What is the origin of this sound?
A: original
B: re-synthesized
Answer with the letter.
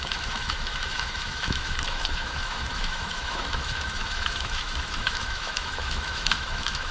B